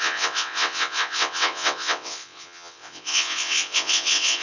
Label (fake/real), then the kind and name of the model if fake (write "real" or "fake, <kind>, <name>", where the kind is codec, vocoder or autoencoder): fake, vocoder, WaveNeXt